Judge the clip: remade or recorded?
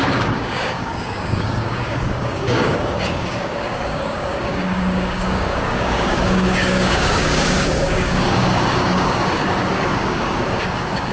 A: remade